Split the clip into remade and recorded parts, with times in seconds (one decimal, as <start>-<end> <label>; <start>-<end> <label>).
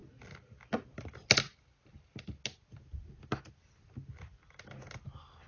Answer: 0.0-5.5 recorded